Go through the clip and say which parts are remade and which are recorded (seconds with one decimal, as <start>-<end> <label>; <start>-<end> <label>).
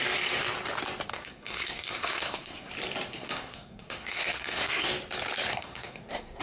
0.0-1.1 recorded; 1.1-2.7 remade; 2.7-3.1 recorded; 3.1-4.9 remade; 4.9-5.5 recorded; 5.5-6.4 remade